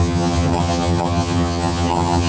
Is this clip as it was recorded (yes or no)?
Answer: no